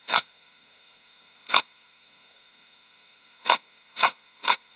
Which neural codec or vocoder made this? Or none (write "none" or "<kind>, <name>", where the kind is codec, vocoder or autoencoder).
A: codec, SNAC